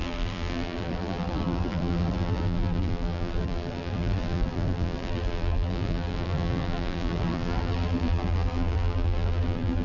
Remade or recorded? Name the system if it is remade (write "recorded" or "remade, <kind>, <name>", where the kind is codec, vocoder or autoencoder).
remade, vocoder, BigVGAN v2